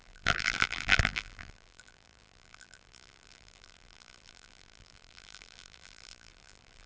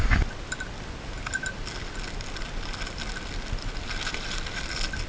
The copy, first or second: first